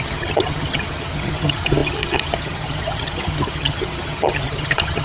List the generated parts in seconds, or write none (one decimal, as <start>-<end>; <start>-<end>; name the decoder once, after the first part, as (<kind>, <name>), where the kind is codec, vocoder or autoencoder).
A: 0.0-5.0 (vocoder, HiFi-GAN)